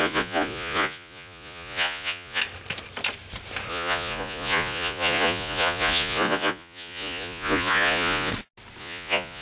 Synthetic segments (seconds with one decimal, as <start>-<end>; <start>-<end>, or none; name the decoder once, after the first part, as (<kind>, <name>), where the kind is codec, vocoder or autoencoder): 0.0-2.4 (vocoder, Vocos); 3.7-8.3; 8.8-9.4

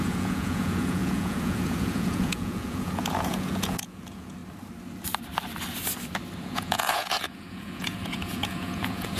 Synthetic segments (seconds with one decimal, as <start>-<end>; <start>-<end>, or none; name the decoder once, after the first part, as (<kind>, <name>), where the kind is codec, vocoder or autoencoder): 0.0-4.4 (vocoder, Vocos); 6.4-9.2

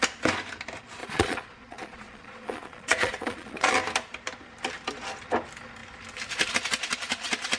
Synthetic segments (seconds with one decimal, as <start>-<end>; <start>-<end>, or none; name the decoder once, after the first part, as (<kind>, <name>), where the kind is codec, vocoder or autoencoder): 1.0-3.7 (vocoder, Vocos)

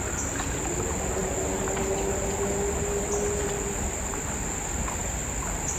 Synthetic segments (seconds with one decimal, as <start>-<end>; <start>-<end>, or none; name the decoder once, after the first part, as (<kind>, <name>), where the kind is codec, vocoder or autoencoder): none

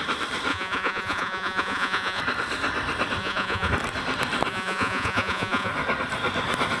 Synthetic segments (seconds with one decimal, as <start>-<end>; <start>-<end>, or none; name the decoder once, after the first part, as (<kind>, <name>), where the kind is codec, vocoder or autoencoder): 0.5-2.2 (vocoder, Vocos); 3.2-3.7; 4.5-5.7

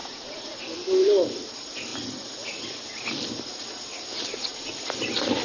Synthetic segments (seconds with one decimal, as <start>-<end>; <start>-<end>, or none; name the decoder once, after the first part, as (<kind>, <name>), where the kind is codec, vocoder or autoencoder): 0.0-0.6 (vocoder, Vocos); 4.3-4.8